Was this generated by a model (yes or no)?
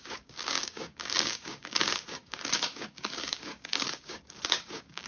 yes